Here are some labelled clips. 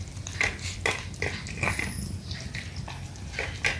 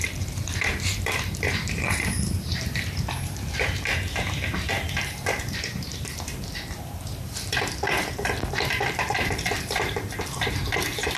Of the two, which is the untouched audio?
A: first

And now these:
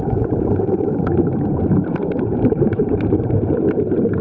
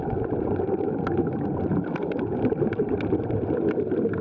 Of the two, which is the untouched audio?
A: second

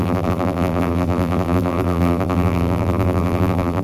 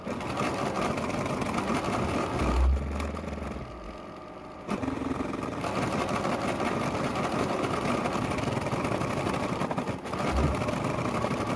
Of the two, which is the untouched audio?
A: second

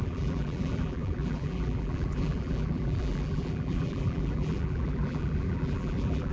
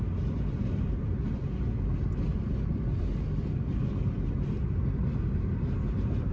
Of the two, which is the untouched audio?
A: second